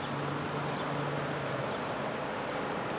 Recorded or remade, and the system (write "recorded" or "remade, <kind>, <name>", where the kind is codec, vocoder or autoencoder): recorded